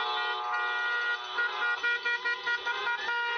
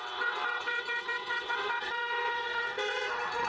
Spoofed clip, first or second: second